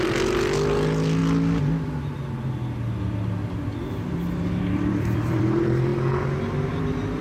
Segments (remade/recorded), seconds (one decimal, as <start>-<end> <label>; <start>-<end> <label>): 0.0-1.2 remade; 1.2-4.6 recorded; 4.6-5.9 remade; 5.9-6.7 recorded; 6.7-7.2 remade